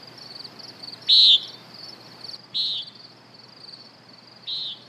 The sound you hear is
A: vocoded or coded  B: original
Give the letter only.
B